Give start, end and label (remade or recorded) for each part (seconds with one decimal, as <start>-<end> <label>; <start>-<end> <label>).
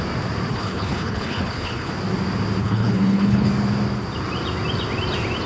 0.0-0.5 recorded; 0.5-1.9 remade; 1.9-2.6 recorded; 2.6-3.5 remade; 3.5-5.5 recorded